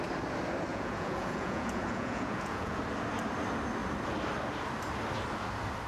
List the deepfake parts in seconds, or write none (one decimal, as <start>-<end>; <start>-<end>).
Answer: 0.7-2.8